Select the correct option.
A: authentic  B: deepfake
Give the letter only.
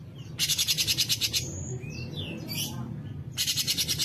A